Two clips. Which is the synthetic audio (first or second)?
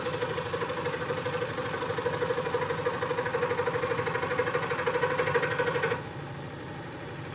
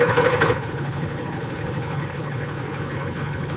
second